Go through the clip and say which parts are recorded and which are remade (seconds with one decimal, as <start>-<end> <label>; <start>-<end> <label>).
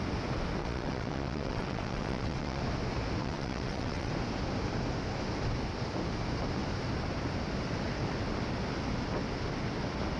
0.0-0.6 recorded; 0.6-2.6 remade; 2.6-3.2 recorded; 3.2-4.1 remade; 4.1-10.2 recorded